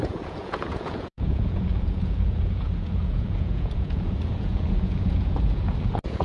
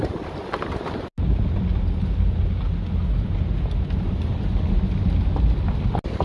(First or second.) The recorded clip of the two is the second